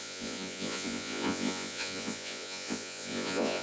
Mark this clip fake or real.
fake